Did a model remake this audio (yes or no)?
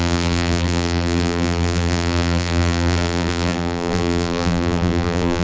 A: yes